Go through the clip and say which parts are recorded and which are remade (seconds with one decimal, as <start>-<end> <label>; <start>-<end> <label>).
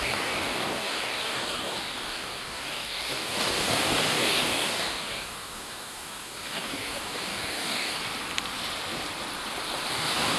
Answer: 0.0-8.0 remade; 8.0-9.9 recorded; 9.9-10.4 remade